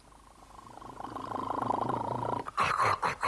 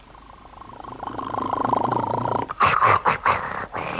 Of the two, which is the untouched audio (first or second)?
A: first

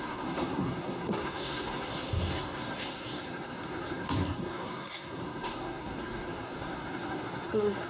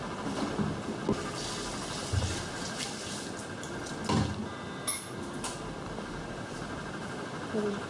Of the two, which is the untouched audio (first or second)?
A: second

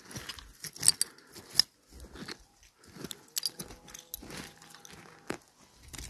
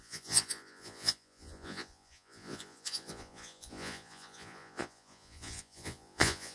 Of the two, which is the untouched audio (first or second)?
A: first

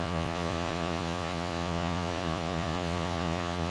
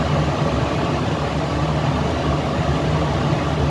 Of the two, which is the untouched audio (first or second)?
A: second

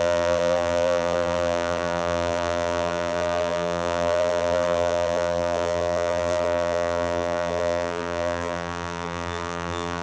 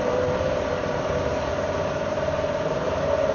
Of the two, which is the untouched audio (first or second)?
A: second